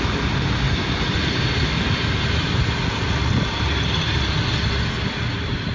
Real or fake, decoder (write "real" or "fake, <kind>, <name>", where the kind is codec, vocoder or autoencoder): real